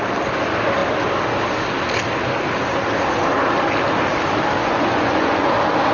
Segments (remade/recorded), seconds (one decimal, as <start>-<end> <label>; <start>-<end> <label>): 0.0-4.6 recorded; 4.6-5.5 remade; 5.5-5.9 recorded